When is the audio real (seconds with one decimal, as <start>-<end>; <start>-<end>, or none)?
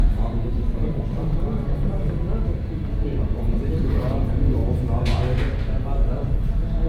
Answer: 4.6-6.1